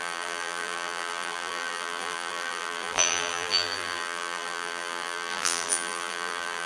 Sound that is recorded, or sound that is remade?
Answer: remade